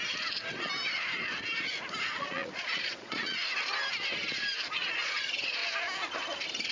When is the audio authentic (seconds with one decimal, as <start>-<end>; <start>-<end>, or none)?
0.0-2.0; 3.4-4.7; 5.6-6.7